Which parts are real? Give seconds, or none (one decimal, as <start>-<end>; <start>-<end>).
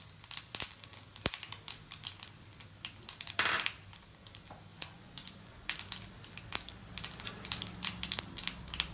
0.0-4.7; 5.8-8.9